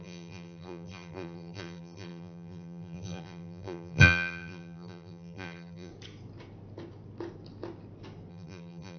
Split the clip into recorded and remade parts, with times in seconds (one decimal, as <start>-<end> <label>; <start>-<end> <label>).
0.0-5.9 remade; 5.9-8.3 recorded; 8.3-9.0 remade